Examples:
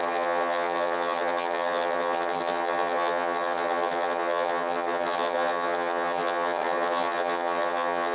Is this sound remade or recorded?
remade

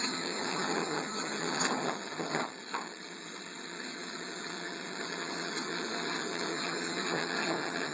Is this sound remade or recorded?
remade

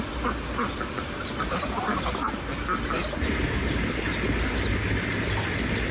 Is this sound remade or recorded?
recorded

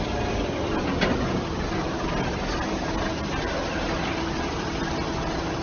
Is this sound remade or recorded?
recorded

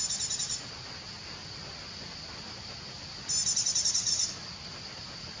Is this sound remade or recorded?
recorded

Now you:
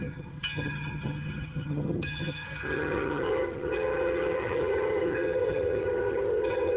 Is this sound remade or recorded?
remade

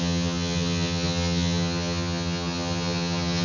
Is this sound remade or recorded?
remade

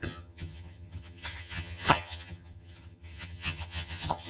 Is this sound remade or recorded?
remade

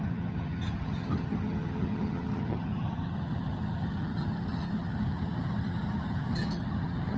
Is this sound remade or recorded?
remade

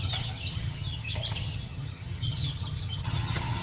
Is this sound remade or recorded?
remade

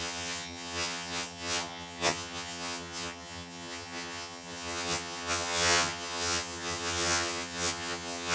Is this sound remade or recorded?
remade